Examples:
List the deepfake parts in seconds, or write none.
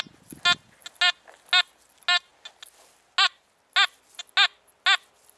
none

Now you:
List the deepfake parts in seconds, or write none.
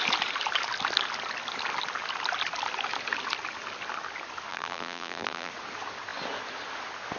4.5-5.5 (vocoder, BigVGAN v2)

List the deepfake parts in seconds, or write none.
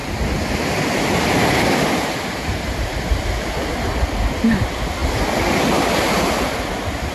none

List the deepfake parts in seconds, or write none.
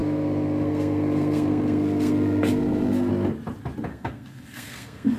0.0-3.1 (codec, SNAC); 3.9-5.2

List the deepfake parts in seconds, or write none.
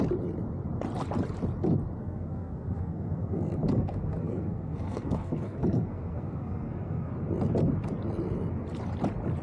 2.0-7.1 (codec, SNAC)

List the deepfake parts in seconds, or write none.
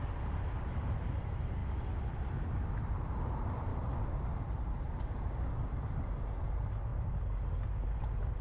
0.0-1.6 (vocoder, BigVGAN v2); 2.2-3.7; 4.6-6.9; 7.9-8.4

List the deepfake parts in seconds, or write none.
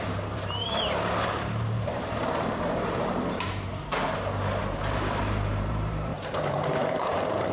0.0-3.7 (vocoder, BigVGAN v2); 4.6-7.5